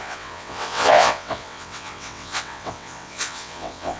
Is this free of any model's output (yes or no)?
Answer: no